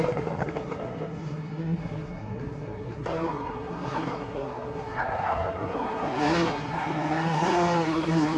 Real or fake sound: fake